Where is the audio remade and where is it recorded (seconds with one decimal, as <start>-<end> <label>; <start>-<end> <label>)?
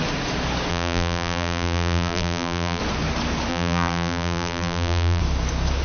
0.0-0.7 recorded; 0.7-2.8 remade; 2.8-3.5 recorded; 3.5-5.2 remade; 5.2-5.8 recorded